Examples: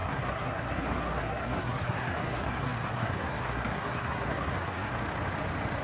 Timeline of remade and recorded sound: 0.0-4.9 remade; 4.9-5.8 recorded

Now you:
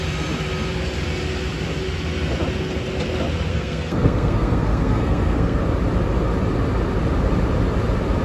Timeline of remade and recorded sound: 0.0-3.5 recorded; 3.5-5.6 remade; 5.6-8.2 recorded

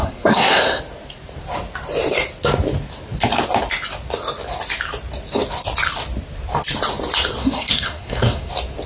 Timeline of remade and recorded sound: 0.0-0.8 remade; 0.8-7.4 recorded; 7.4-8.5 remade; 8.5-8.9 recorded